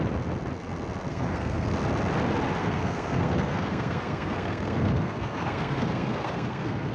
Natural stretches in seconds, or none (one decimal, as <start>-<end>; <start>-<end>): 0.0-1.1; 1.7-2.6